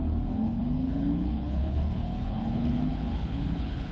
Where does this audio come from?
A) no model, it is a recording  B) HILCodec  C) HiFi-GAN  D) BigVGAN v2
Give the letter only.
B